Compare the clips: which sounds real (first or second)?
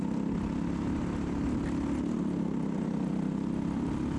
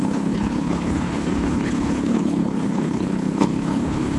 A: first